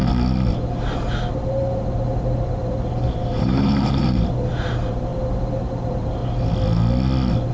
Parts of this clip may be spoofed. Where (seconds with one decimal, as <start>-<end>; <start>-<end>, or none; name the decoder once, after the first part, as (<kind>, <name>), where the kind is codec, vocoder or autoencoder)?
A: 1.3-5.1 (vocoder, BigVGAN v2); 5.6-6.2